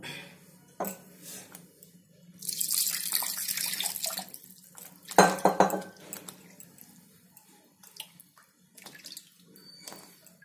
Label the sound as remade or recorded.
recorded